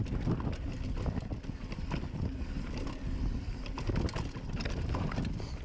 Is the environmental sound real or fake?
real